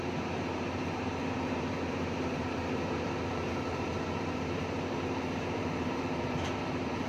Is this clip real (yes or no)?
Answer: no